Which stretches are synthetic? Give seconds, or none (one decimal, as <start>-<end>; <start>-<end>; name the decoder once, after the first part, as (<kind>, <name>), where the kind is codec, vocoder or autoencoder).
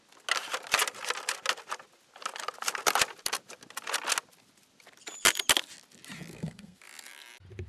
6.3-6.8 (codec, SNAC)